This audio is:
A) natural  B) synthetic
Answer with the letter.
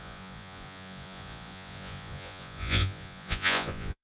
B